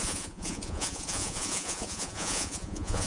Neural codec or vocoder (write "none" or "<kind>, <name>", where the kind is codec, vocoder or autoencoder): vocoder, Vocos